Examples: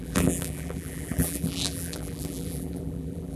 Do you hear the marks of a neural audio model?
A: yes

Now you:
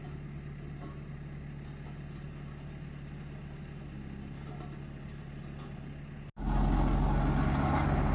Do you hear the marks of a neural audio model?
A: no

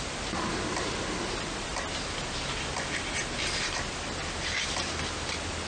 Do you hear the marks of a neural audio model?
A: no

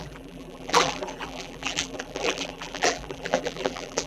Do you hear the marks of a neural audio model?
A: yes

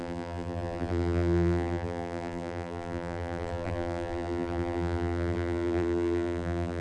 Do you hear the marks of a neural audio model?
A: yes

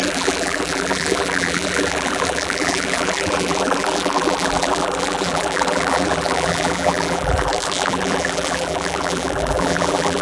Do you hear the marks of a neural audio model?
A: yes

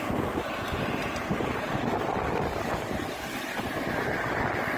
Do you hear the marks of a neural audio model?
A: yes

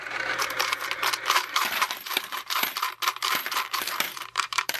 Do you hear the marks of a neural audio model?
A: yes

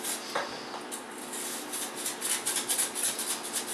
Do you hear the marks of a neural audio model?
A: no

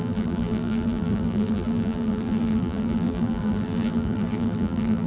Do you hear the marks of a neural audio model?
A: yes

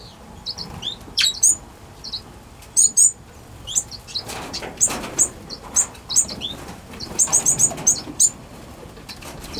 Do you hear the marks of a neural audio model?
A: yes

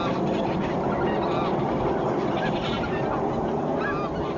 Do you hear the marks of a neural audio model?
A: no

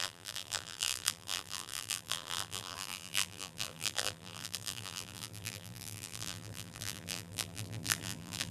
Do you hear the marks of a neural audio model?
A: yes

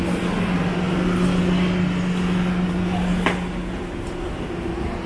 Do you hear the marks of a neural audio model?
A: no